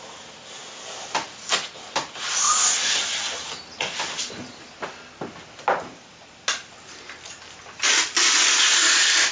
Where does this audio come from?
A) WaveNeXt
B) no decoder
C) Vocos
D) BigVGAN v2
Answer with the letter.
B